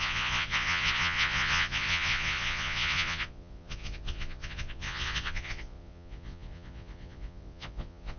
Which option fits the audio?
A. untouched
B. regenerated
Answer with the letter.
B